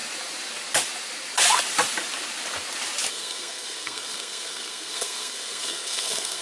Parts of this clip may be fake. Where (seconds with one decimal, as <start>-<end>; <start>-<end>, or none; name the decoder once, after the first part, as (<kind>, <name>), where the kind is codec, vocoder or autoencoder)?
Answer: 3.1-6.4 (codec, SNAC)